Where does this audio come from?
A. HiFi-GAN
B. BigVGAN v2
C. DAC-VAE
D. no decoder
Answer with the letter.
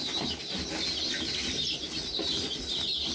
D